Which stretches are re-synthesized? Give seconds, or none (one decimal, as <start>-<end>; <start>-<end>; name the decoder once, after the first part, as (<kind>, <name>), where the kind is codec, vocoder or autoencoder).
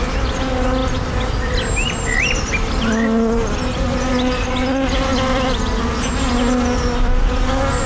none